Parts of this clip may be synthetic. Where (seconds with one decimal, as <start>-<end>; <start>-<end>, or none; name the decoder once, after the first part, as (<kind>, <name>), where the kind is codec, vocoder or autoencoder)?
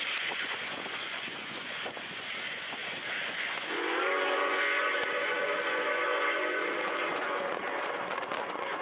0.0-8.8 (vocoder, Vocos)